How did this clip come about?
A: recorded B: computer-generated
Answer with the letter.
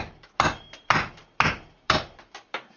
B